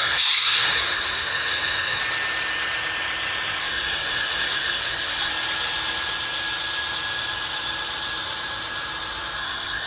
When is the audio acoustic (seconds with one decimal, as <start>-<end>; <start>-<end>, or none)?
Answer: 2.0-3.6; 5.3-9.4